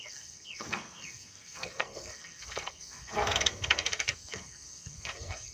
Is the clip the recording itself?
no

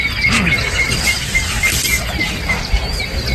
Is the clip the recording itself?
yes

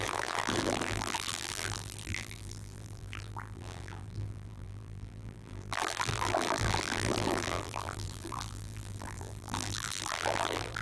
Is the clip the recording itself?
no